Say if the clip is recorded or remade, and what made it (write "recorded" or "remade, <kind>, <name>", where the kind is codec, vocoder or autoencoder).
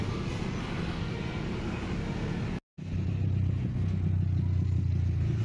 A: recorded